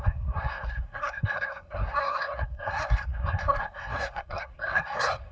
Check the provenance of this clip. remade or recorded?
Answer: remade